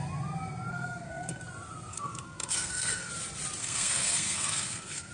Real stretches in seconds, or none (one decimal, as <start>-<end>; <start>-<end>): 0.0-0.7; 1.4-1.9; 3.1-3.6